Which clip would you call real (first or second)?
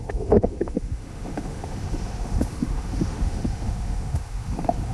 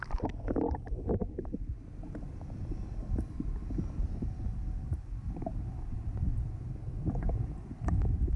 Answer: second